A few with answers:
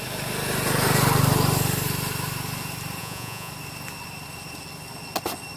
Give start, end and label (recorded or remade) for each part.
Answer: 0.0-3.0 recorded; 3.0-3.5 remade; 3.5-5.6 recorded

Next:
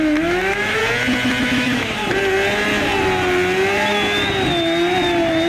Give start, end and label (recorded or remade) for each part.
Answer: 0.0-0.8 remade; 0.8-1.4 recorded; 1.4-2.0 remade; 2.0-5.5 recorded

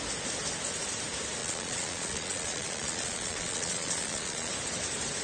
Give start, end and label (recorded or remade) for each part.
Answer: 0.0-1.4 recorded; 1.4-4.5 remade; 4.5-5.2 recorded

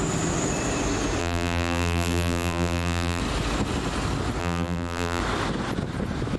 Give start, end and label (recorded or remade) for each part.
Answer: 0.0-1.2 recorded; 1.2-3.2 remade; 3.2-4.4 recorded; 4.4-5.2 remade; 5.2-6.4 recorded

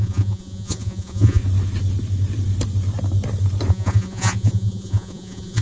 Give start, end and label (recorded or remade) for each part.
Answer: 0.0-1.4 remade; 1.4-3.7 recorded; 3.7-5.6 remade

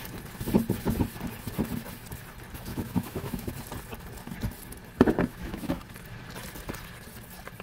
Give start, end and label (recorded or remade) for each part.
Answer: 0.0-2.7 recorded; 2.7-3.5 remade; 3.5-5.3 recorded; 5.3-5.8 remade; 5.8-7.6 recorded